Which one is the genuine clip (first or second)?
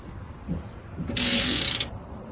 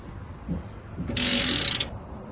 second